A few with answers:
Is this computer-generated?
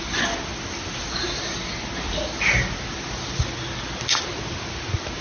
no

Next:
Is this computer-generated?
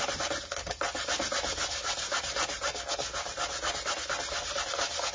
no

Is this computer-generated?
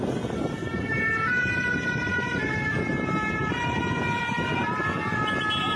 yes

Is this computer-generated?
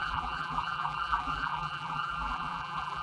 yes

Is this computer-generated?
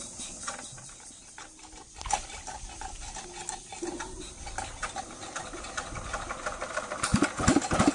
no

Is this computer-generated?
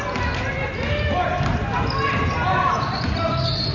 no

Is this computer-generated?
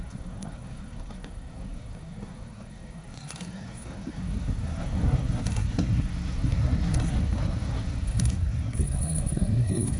yes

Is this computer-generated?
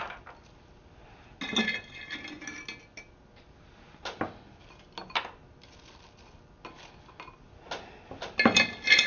no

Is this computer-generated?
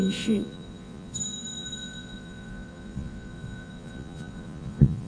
yes